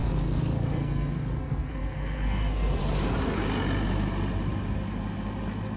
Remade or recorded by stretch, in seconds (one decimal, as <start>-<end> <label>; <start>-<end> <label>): 0.0-2.8 remade; 2.8-5.8 recorded